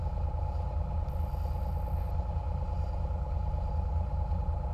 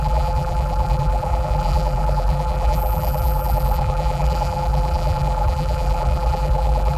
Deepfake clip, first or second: second